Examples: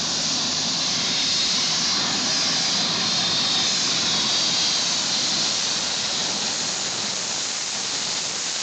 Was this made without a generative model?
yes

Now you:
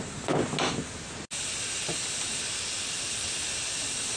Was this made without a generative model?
yes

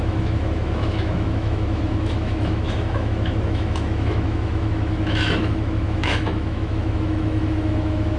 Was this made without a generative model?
no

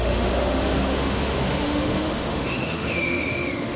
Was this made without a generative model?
no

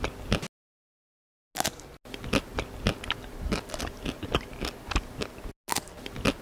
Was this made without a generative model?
yes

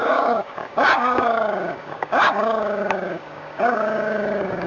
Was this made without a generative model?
no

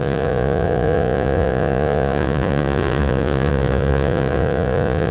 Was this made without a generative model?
no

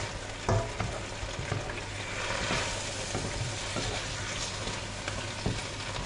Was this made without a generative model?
yes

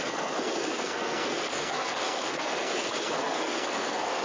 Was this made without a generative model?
no